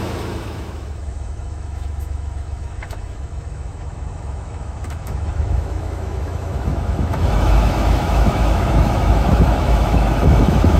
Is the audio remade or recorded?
remade